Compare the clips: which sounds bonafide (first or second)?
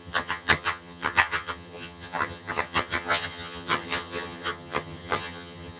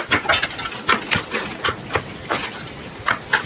second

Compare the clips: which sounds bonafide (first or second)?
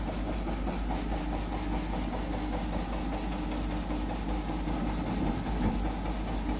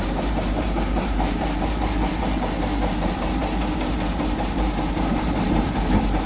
first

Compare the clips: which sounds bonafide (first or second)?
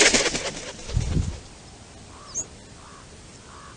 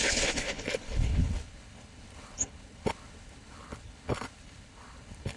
first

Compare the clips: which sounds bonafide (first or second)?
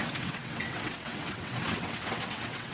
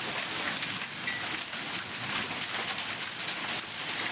second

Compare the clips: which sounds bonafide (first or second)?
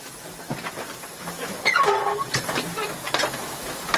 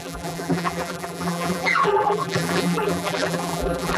first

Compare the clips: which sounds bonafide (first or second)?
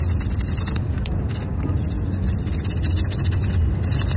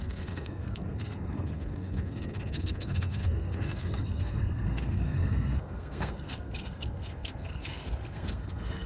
first